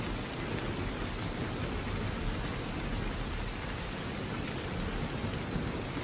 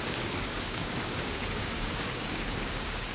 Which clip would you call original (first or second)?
first